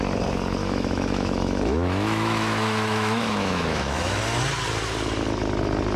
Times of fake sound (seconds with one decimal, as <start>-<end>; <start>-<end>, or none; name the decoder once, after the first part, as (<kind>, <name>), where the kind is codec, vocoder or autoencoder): 0.6-4.2 (autoencoder, DAC-VAE)